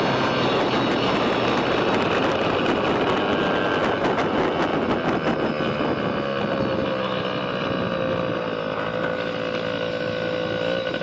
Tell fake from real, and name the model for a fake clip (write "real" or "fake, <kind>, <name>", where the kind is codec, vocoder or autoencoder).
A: real